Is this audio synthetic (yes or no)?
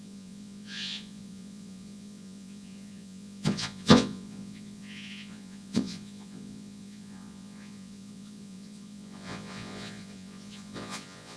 yes